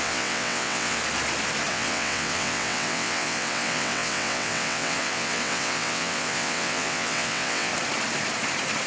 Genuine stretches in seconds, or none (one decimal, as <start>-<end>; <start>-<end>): 1.0-1.7; 7.7-8.9